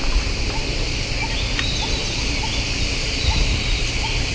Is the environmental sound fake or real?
real